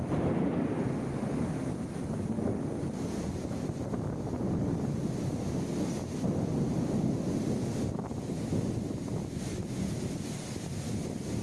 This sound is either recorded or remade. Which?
recorded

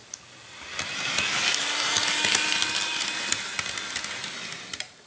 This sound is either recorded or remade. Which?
recorded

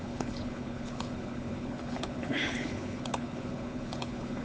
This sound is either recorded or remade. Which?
remade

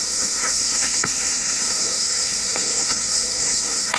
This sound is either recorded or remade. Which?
remade